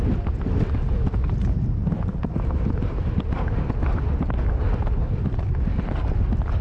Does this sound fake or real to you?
real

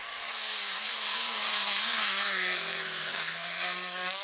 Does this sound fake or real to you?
fake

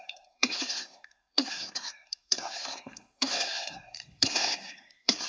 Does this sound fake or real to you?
fake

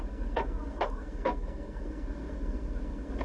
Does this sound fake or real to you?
fake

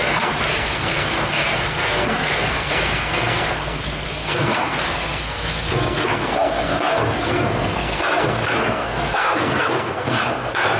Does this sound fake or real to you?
fake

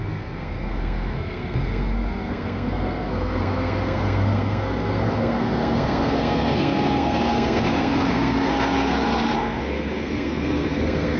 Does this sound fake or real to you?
fake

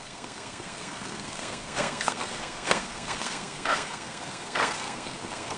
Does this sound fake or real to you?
fake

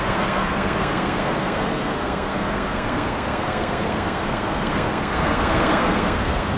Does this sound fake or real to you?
fake